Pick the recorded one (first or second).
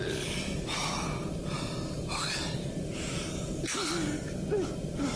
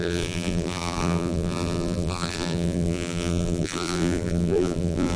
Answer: first